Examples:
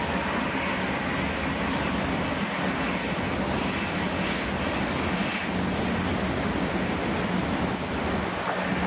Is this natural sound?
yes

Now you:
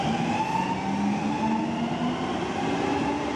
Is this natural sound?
yes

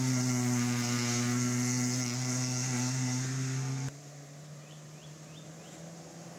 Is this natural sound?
yes